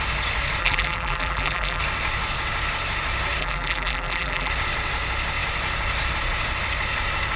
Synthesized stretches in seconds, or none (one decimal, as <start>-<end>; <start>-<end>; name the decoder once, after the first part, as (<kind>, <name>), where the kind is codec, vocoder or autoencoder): 0.6-1.8 (vocoder, BigVGAN v2); 3.4-4.5